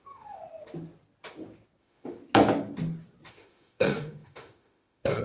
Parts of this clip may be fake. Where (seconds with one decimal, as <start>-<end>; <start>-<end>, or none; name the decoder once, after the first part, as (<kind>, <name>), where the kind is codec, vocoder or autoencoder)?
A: 0.0-0.4 (autoencoder, DAC-VAE); 1.8-2.2; 3.3-5.2